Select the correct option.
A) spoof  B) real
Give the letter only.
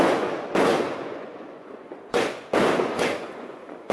A